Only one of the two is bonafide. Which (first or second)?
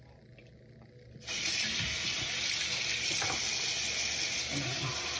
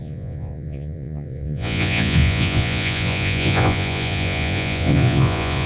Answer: first